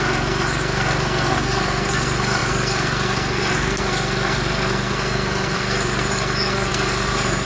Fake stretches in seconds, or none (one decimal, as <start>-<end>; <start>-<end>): 0.0-7.4